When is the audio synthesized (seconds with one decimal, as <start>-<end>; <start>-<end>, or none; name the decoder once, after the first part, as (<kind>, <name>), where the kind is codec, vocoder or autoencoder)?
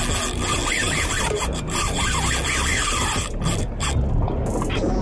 0.8-2.1 (vocoder, BigVGAN v2); 2.7-3.4; 4.4-5.0